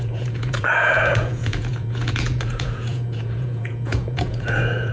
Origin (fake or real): fake